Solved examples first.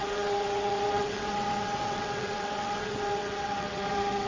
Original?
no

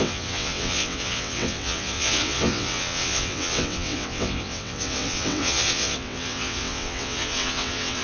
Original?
no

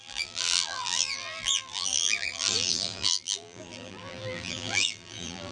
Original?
no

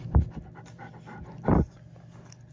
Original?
yes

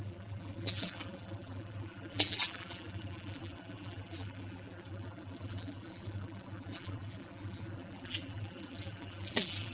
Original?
no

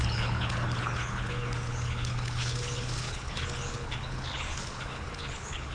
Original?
no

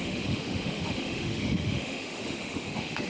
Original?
no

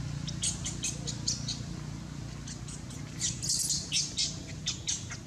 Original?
yes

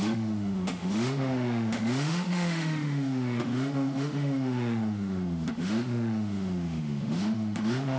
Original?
no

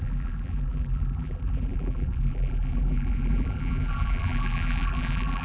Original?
no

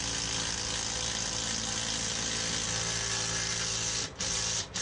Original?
yes